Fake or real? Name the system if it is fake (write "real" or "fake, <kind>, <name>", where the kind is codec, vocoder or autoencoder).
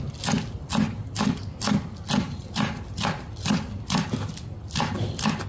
real